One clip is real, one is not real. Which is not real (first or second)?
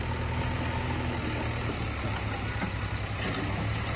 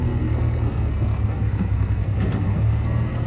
second